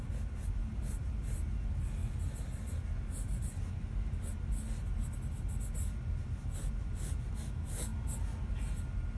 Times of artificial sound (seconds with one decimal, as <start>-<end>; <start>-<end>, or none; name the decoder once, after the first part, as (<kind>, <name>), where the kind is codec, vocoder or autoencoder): 0.6-1.2 (vocoder, BigVGAN v2)